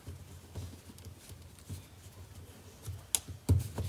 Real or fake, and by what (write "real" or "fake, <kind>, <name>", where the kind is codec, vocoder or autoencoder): real